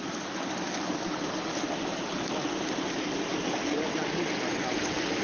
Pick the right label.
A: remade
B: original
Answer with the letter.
B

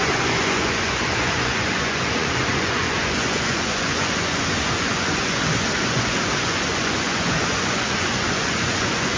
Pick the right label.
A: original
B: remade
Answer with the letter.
B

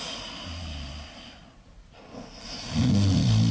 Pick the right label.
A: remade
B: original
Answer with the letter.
B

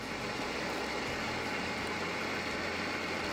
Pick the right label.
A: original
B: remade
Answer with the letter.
A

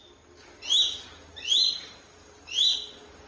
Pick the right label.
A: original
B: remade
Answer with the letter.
A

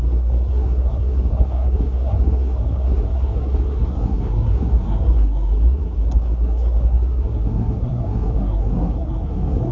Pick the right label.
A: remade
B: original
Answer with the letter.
A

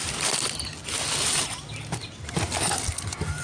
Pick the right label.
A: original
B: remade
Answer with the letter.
A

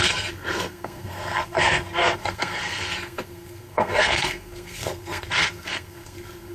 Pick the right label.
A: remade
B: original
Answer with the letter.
A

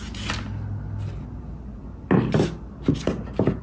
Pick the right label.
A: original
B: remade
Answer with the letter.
A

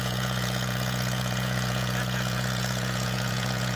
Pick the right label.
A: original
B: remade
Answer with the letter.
B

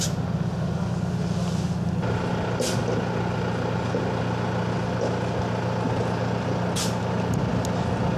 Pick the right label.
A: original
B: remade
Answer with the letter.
A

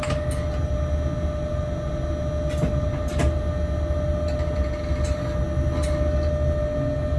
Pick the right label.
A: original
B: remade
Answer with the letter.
A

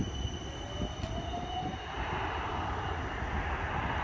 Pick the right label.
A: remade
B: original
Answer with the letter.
B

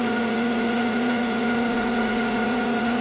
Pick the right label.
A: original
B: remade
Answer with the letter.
B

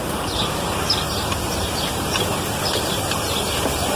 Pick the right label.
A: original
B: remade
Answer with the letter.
B